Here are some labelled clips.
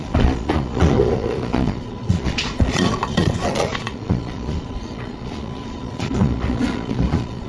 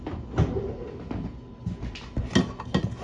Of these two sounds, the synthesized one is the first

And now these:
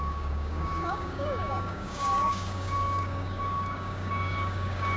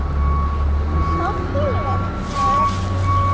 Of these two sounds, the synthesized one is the first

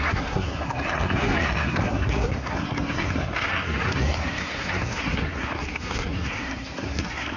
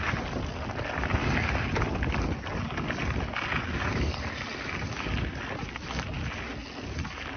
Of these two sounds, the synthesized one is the first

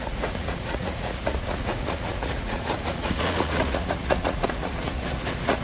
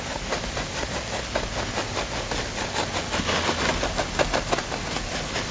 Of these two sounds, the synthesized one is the first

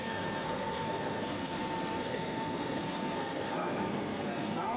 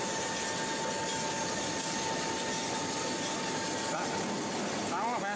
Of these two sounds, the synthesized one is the first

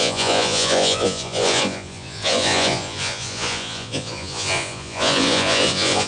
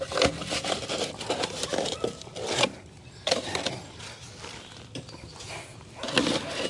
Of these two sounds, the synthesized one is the first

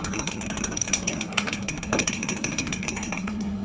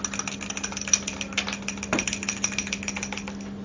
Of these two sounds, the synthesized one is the first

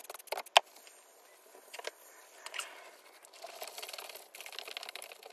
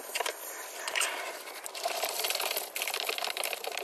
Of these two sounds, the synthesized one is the second